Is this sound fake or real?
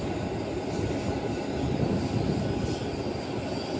real